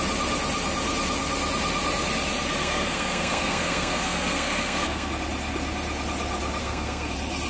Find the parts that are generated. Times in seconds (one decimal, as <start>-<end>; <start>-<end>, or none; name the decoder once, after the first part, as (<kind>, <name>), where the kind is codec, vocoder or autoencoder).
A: 2.6-5.1 (codec, SNAC); 6.6-7.1